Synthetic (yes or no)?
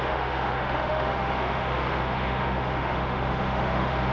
yes